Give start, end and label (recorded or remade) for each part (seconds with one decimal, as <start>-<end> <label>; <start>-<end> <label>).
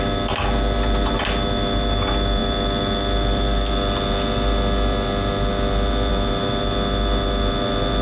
0.0-8.0 recorded